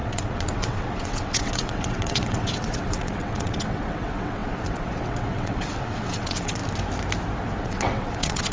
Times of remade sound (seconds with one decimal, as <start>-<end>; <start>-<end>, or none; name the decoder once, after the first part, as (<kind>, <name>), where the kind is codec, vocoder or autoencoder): 0.0-6.6 (vocoder, WaveNeXt); 7.6-8.5